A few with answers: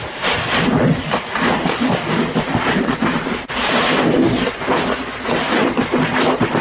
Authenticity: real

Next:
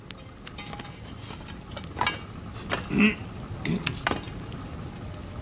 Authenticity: real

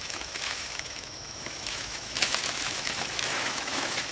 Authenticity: fake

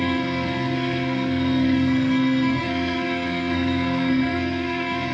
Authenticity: fake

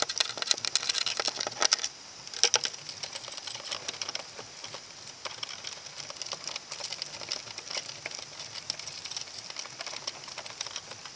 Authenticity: real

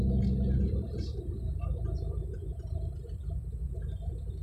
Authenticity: real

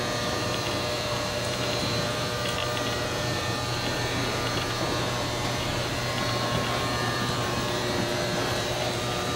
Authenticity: fake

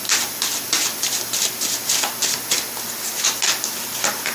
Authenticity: real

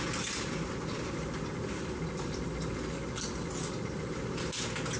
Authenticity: real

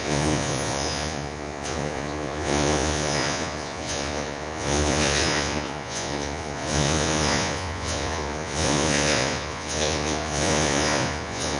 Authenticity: fake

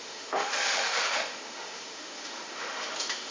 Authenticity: fake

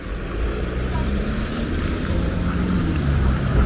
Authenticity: fake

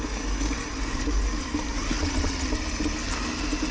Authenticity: real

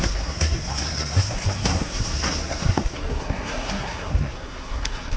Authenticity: fake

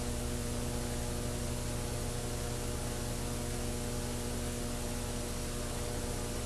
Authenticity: real